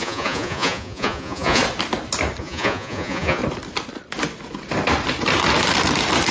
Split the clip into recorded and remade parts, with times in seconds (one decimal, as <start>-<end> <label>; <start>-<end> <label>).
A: 0.0-1.6 remade; 1.6-2.4 recorded; 2.4-3.4 remade; 3.4-6.3 recorded